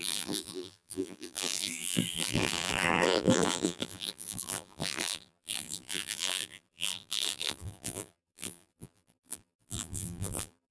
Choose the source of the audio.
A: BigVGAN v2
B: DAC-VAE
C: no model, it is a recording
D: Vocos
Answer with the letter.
A